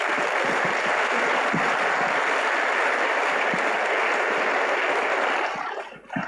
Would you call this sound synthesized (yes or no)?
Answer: no